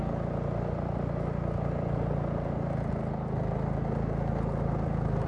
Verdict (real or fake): real